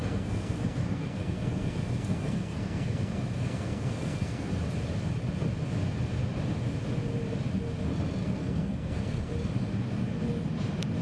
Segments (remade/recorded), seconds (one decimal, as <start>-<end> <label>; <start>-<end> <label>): 0.0-4.5 remade; 4.5-8.2 recorded; 8.2-9.3 remade; 9.3-11.0 recorded